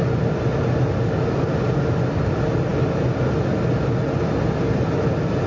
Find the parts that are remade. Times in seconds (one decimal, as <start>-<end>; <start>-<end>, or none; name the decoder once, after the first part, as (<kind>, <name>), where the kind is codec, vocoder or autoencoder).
none